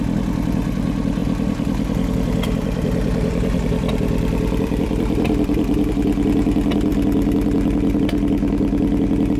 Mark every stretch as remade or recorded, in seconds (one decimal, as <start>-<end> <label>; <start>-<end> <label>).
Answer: 0.0-1.2 recorded; 1.2-5.9 remade; 5.9-9.4 recorded

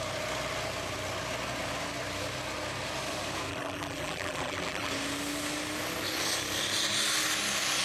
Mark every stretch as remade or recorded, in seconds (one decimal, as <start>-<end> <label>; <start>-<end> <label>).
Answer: 0.0-3.5 recorded; 3.5-4.9 remade; 4.9-7.8 recorded